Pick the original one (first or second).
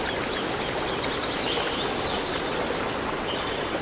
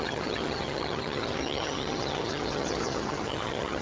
first